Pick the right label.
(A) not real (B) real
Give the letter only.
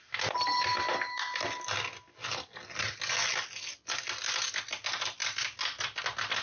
B